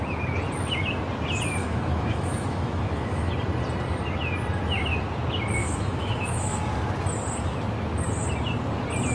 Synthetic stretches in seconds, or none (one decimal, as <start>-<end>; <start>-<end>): 1.6-3.3; 5.6-6.6